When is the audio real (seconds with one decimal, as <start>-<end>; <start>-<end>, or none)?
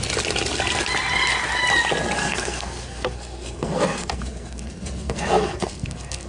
0.0-2.2